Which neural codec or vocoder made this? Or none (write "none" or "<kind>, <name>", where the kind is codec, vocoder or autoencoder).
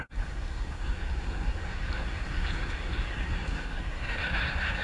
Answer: codec, SNAC